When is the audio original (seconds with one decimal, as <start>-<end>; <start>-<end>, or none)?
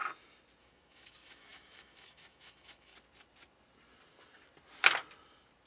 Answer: 0.0-0.6; 2.9-5.7